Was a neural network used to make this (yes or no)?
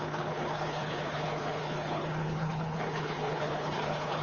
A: yes